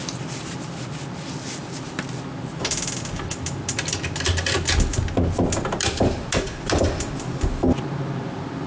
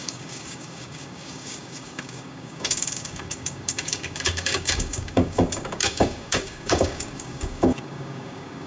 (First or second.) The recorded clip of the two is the first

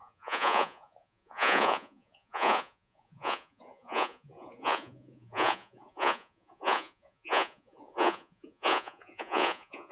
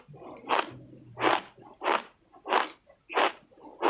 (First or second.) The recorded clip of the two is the second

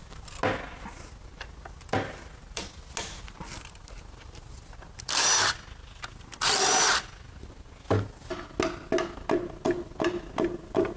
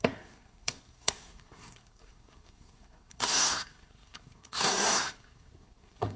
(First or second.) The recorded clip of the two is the first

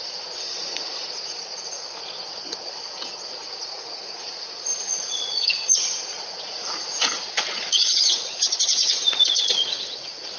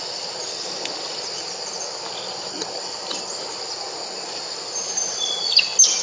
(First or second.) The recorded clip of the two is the second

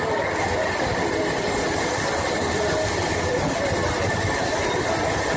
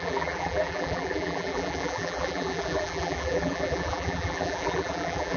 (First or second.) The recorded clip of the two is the first